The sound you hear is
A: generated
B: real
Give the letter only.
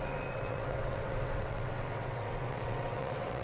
A